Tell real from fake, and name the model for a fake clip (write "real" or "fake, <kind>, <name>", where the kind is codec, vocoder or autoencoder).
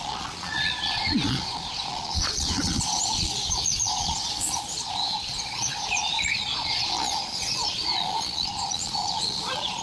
fake, vocoder, Vocos